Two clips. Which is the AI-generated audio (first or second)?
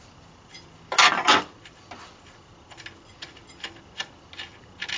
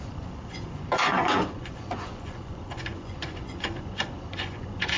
second